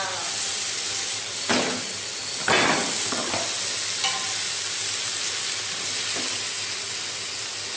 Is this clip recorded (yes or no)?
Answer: yes